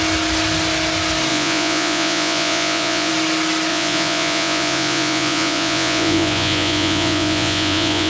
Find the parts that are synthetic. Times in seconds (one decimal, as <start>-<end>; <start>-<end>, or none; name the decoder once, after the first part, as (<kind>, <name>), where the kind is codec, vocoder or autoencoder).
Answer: 1.3-3.1 (vocoder, Vocos); 3.7-8.1